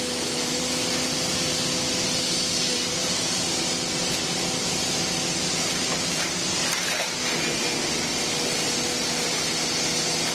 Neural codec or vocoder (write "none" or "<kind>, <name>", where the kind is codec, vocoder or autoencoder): none